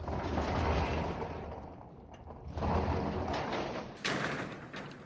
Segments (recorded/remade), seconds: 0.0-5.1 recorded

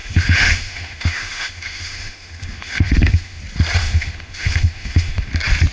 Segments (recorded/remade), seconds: 0.0-3.4 remade; 3.4-3.8 recorded; 3.8-5.3 remade; 5.3-5.7 recorded